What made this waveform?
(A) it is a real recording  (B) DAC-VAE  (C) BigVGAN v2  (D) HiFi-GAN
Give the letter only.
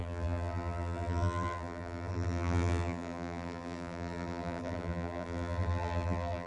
C